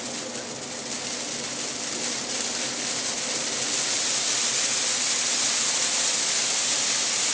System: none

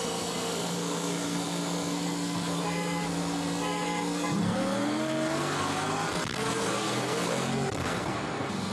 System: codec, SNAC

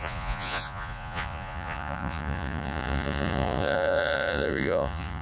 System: vocoder, Vocos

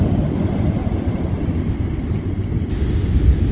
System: none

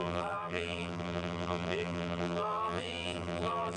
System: vocoder, BigVGAN v2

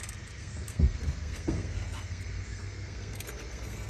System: codec, SNAC